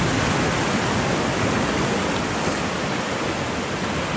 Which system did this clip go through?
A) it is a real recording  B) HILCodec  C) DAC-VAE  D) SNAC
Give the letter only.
A